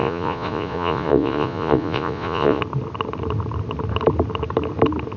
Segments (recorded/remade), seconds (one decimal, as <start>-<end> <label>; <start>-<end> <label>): 0.0-2.6 remade; 2.6-5.2 recorded